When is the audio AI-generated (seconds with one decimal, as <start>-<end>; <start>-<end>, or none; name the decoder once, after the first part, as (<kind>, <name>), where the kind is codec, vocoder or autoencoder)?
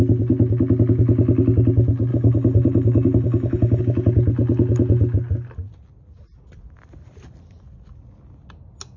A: 2.1-3.8 (codec, DAC)